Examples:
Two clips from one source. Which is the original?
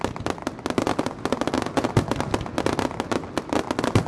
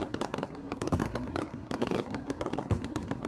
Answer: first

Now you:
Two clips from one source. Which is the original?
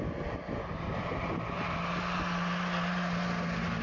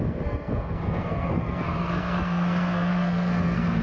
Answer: first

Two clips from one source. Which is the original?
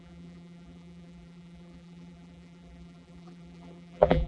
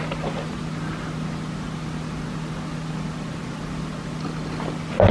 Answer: second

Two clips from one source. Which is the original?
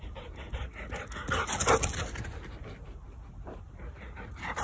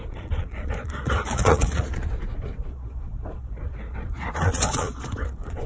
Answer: first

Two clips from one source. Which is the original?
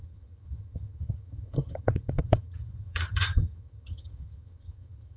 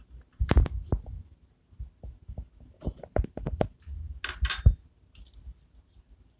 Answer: second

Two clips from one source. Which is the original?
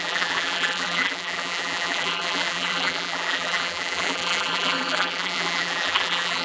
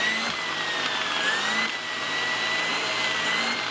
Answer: second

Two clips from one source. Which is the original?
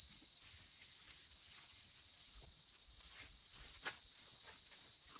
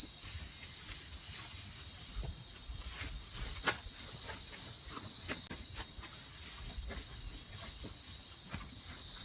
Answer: second